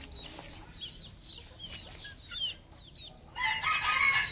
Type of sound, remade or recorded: recorded